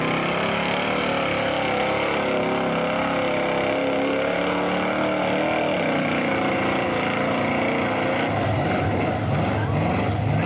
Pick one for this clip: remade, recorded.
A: recorded